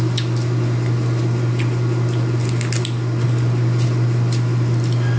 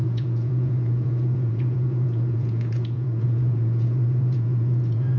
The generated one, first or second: second